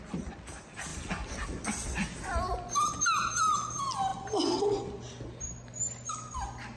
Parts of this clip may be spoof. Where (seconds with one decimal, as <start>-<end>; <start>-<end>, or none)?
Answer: none